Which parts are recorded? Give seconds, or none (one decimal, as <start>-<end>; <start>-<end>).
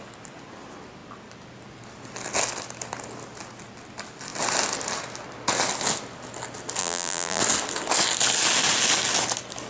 0.0-6.8; 7.4-9.7